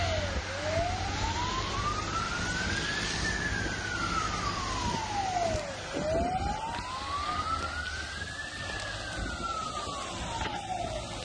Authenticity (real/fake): real